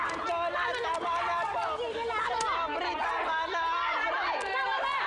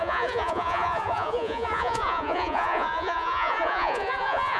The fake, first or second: second